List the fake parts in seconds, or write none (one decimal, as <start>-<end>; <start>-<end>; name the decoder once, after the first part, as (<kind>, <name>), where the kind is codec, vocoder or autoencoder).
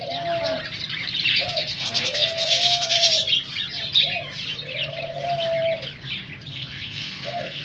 1.3-3.1 (codec, SNAC); 6.5-7.6